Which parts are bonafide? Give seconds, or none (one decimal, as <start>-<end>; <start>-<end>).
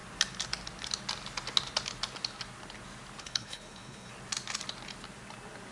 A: 0.0-3.2; 4.1-5.7